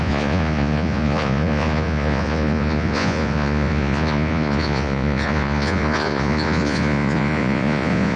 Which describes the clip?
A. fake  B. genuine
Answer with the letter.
A